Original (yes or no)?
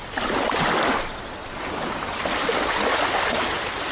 yes